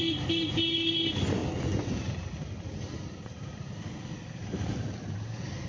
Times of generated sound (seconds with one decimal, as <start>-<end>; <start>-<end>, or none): none